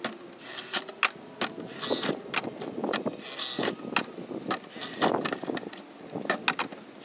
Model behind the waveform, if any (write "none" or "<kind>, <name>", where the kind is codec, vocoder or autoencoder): none